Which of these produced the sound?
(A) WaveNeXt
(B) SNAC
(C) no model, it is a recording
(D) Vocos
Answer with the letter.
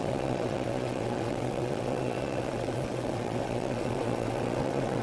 A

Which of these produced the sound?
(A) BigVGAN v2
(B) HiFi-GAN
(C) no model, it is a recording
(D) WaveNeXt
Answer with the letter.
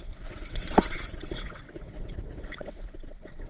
D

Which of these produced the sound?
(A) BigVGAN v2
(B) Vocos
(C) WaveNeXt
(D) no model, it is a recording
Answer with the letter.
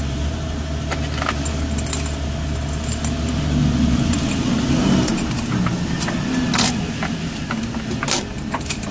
D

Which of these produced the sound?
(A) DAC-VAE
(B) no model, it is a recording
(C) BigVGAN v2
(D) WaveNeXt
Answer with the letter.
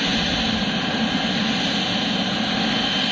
B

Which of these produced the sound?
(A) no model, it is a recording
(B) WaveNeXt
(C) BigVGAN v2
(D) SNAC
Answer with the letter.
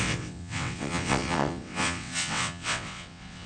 B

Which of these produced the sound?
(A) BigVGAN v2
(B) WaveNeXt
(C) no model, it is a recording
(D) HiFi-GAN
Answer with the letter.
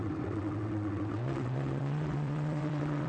B